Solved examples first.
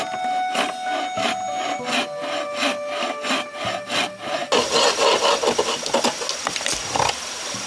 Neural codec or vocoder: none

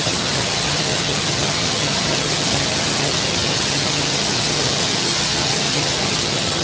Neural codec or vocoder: vocoder, HiFi-GAN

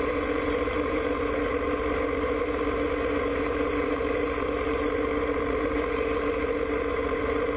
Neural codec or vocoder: vocoder, BigVGAN v2